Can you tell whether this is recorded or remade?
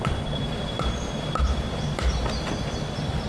recorded